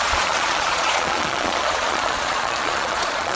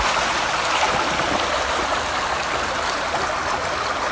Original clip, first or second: second